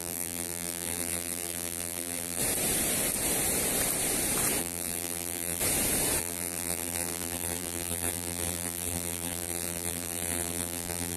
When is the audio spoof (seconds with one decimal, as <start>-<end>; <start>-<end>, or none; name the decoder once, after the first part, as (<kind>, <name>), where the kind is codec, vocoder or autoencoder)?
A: 0.0-2.4 (vocoder, BigVGAN v2); 4.6-5.6; 6.2-11.2